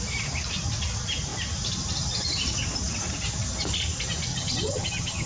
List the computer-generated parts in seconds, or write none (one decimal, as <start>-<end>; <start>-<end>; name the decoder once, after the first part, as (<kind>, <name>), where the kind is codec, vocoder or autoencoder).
4.3-5.3 (vocoder, HiFi-GAN)